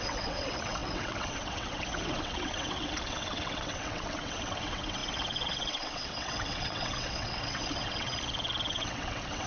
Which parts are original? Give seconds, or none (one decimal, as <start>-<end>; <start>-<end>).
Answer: 8.1-8.7